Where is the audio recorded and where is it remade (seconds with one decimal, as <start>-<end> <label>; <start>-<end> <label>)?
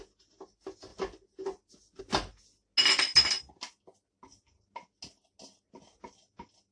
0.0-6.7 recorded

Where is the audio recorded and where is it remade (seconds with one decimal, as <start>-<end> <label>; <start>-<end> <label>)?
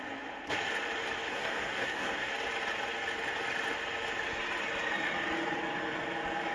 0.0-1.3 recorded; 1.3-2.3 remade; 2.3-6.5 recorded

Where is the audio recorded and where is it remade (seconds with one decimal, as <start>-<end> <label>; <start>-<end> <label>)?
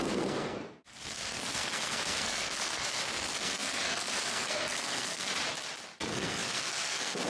0.0-5.3 remade; 5.3-6.0 recorded; 6.0-7.3 remade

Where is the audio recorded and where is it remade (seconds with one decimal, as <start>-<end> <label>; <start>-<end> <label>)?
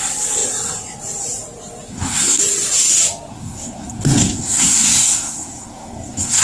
0.0-1.9 recorded; 1.9-2.4 remade; 2.4-3.3 recorded; 3.3-6.4 remade